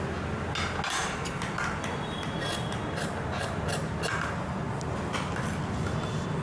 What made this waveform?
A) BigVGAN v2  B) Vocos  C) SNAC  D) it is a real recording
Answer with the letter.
D